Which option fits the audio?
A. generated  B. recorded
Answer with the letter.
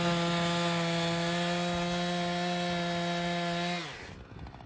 B